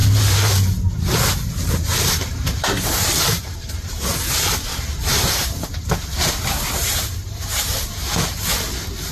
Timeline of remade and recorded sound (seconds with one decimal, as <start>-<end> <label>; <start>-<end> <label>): 0.0-0.5 remade; 0.5-1.9 recorded; 1.9-4.0 remade; 4.0-4.7 recorded; 4.7-6.3 remade; 6.3-6.8 recorded; 6.8-7.7 remade; 7.7-9.1 recorded